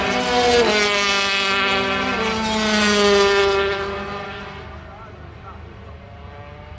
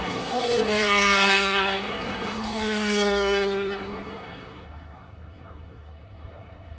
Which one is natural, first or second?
first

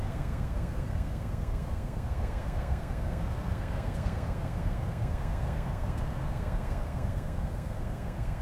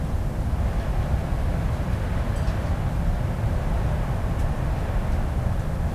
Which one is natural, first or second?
second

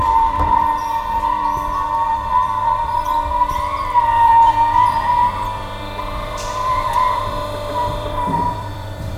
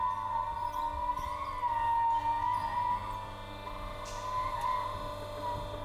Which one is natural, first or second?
second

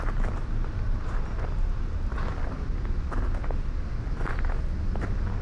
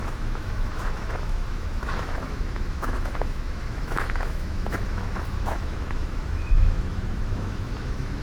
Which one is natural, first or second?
first